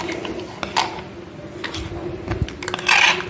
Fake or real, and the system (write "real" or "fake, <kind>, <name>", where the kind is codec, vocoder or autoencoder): real